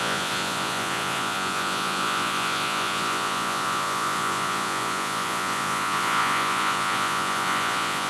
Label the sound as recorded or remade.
remade